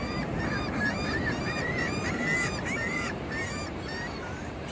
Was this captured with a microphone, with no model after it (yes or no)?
no